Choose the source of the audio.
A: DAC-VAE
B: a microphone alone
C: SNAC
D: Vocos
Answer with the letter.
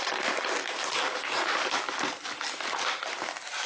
B